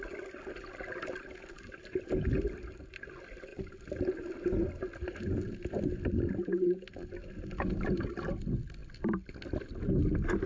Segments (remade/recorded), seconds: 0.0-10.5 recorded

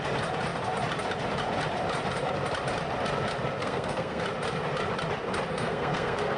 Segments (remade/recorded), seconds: 0.0-3.6 recorded; 3.6-4.2 remade; 4.2-5.5 recorded; 5.5-6.4 remade

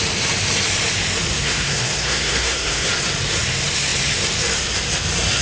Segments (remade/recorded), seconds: 0.0-1.3 recorded; 1.3-2.9 remade; 2.9-5.4 recorded

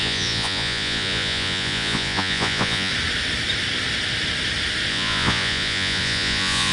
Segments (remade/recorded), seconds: 0.0-2.9 remade; 2.9-4.9 recorded; 4.9-6.7 remade